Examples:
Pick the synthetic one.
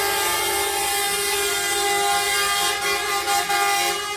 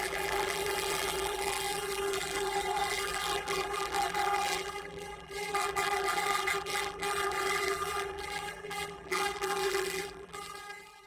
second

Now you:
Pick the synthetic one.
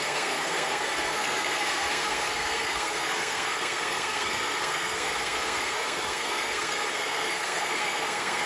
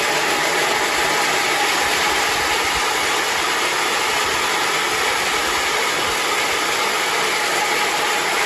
first